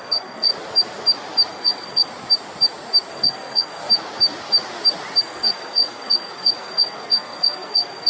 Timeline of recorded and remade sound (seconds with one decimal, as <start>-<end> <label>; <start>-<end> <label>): 0.0-0.5 remade; 0.5-1.5 recorded; 1.5-2.1 remade; 2.1-3.1 recorded; 3.1-3.8 remade; 3.8-5.2 recorded; 5.2-8.1 remade